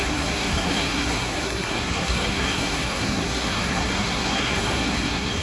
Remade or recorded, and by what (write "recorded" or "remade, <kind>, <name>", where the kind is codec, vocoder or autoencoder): remade, codec, SNAC